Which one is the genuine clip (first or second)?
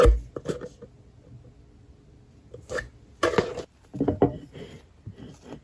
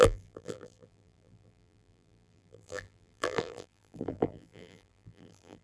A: first